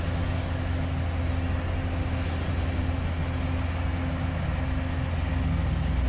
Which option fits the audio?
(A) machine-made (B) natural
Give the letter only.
B